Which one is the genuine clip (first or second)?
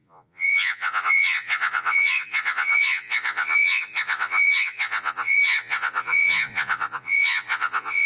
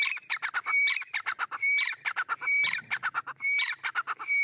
second